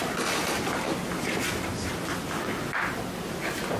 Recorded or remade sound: recorded